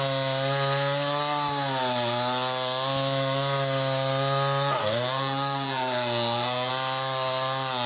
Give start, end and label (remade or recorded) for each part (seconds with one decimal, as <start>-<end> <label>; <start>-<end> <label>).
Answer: 0.0-4.8 recorded; 4.8-6.7 remade; 6.7-7.9 recorded